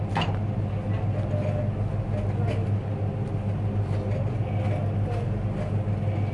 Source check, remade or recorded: recorded